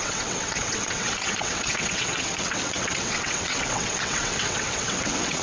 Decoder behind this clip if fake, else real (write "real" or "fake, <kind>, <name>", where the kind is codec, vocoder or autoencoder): fake, vocoder, WaveNeXt